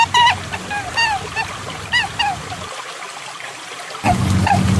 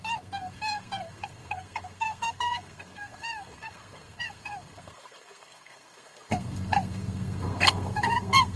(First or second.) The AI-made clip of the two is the second